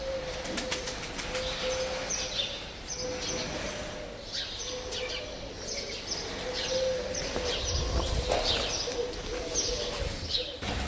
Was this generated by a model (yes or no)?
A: no